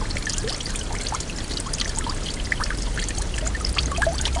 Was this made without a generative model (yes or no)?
no